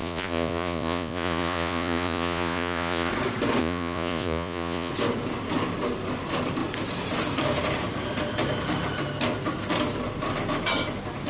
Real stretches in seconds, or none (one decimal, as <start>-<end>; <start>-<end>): 3.1-3.6; 4.9-11.3

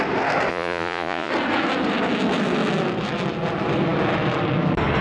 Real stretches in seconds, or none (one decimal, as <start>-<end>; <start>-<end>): 0.0-0.5; 1.3-5.0

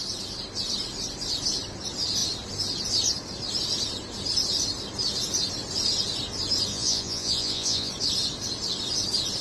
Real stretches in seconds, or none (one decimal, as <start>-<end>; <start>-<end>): 0.0-6.7; 7.9-9.4

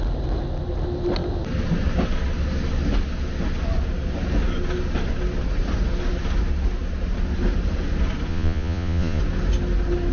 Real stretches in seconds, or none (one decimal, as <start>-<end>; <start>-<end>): 0.0-8.3; 9.2-10.1

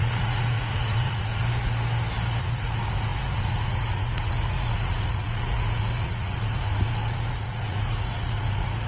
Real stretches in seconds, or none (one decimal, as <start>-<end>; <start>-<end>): 1.4-2.4

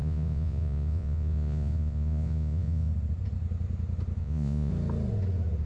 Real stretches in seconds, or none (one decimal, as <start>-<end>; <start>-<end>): 2.9-4.2; 4.7-5.7